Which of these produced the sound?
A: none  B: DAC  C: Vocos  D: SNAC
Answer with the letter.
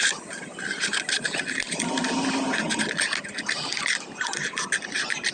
A